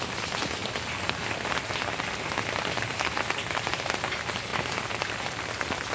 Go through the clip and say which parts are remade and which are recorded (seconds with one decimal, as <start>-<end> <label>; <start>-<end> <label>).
0.0-5.9 recorded